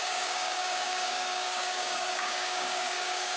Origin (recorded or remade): remade